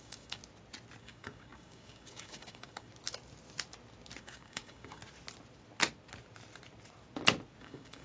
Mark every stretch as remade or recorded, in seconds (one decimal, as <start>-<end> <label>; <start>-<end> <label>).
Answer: 0.0-0.4 remade; 0.4-1.0 recorded; 1.0-2.9 remade; 2.9-4.2 recorded; 4.2-5.0 remade; 5.0-7.6 recorded; 7.6-8.0 remade